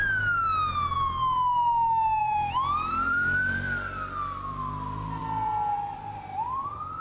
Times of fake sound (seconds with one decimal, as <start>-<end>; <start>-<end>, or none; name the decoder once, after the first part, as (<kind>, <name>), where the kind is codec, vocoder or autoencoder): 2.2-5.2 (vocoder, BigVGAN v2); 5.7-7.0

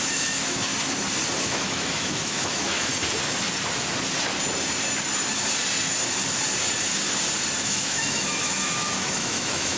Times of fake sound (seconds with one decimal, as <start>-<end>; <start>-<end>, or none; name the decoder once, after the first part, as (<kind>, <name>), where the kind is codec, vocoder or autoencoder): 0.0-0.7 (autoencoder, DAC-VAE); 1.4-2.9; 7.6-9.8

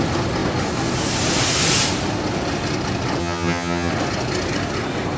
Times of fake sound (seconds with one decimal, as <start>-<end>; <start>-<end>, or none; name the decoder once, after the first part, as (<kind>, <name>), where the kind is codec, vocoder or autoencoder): 3.2-3.9 (vocoder, HiFi-GAN)

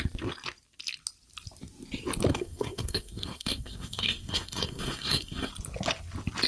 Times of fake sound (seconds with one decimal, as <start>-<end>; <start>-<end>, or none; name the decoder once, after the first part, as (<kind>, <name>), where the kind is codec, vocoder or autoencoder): 2.3-5.5 (codec, SNAC)

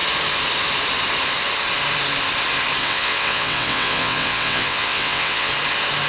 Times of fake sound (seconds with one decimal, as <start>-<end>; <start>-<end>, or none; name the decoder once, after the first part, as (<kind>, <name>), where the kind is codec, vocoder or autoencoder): 2.8-5.5 (vocoder, WaveNeXt)

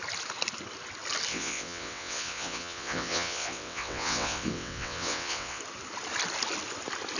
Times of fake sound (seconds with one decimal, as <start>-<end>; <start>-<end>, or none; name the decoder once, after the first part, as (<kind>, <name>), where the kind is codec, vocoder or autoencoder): 1.3-5.6 (vocoder, WaveNeXt)

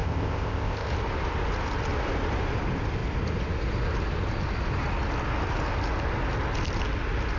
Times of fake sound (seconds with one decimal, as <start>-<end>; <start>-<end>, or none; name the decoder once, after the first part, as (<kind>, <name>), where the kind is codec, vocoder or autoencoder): 0.0-0.9 (codec, ZipCodec)

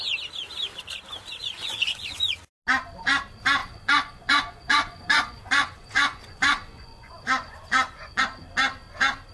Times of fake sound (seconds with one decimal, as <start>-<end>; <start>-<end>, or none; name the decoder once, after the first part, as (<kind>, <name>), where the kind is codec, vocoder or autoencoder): 1.4-2.3 (vocoder, Vocos); 3.6-8.2